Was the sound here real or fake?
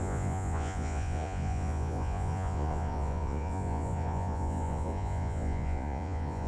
fake